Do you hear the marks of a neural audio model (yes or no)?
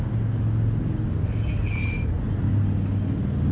no